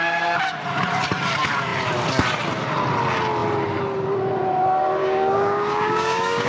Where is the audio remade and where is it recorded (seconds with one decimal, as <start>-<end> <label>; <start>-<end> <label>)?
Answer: 0.0-5.0 recorded; 5.0-6.5 remade